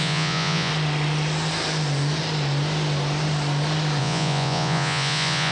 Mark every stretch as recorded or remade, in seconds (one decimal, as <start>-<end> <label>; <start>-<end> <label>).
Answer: 0.0-0.7 remade; 0.7-4.0 recorded; 4.0-5.5 remade

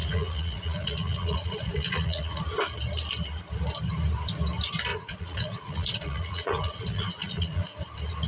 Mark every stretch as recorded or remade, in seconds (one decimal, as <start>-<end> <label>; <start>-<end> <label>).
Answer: 0.0-2.4 remade; 2.4-4.9 recorded; 4.9-7.8 remade; 7.8-8.3 recorded

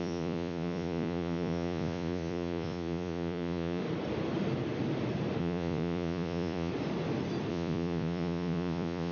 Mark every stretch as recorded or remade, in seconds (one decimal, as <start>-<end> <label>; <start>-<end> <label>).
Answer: 0.0-3.8 remade; 3.8-5.4 recorded; 5.4-6.7 remade; 6.7-7.5 recorded; 7.5-9.1 remade